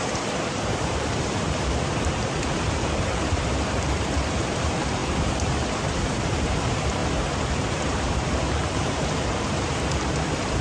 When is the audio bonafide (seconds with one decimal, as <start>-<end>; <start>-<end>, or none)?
7.0-7.7